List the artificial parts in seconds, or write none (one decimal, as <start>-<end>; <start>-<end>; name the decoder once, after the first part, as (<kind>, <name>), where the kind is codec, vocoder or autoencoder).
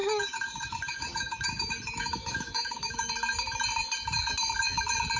0.0-3.1 (autoencoder, DAC-VAE)